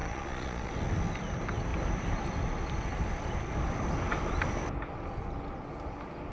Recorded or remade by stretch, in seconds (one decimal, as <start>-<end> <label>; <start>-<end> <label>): 0.0-0.7 remade; 0.7-6.3 recorded